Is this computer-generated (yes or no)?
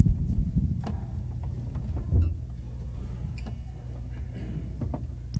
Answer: no